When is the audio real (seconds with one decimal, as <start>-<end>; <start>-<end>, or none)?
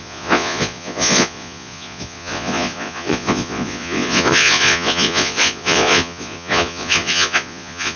none